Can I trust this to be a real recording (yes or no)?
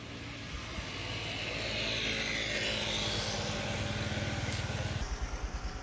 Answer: yes